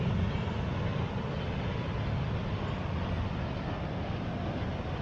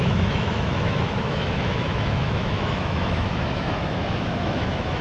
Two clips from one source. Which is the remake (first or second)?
second